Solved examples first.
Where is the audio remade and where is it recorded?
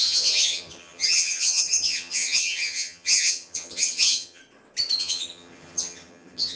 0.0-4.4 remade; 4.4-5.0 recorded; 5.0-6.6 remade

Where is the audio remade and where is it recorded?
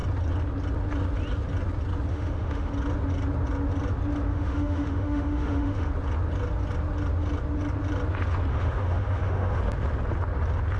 0.0-2.1 recorded; 2.1-2.7 remade; 2.7-4.3 recorded; 4.3-5.9 remade; 5.9-8.5 recorded; 8.5-9.6 remade; 9.6-10.8 recorded